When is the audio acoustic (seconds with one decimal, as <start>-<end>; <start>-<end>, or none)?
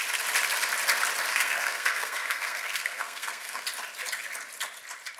0.0-1.3; 3.6-5.2